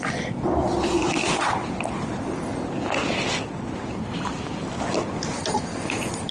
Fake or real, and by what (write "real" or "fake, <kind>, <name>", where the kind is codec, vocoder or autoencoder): real